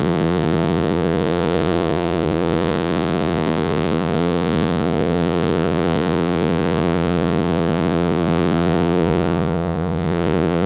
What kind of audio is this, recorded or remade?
remade